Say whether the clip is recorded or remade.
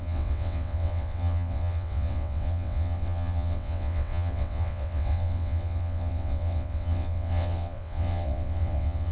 remade